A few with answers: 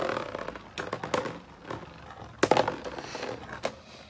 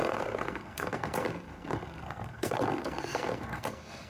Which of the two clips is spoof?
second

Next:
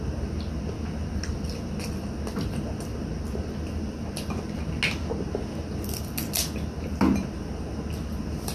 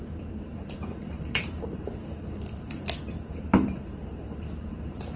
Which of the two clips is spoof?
second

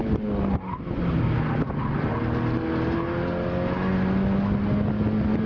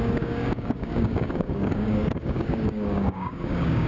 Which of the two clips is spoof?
second